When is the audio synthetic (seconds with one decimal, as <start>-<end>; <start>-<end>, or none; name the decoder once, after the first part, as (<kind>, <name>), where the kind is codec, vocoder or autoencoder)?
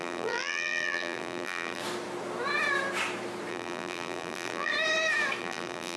0.0-1.8 (vocoder, BigVGAN v2); 3.5-4.7; 5.4-6.0